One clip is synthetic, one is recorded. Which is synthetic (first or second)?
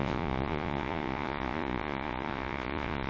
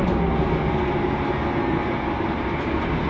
first